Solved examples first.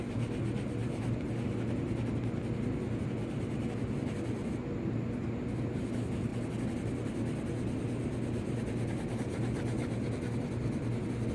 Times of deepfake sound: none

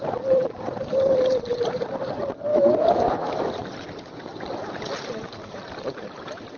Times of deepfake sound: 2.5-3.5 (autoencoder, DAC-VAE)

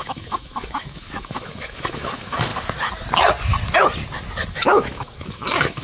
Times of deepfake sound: 0.0-2.5 (autoencoder, DAC-VAE); 4.5-5.8

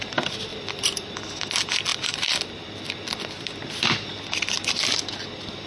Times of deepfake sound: none